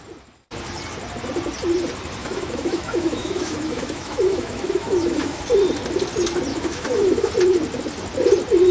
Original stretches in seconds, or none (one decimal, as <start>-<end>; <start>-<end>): 0.0-2.2; 5.4-6.5; 7.3-8.7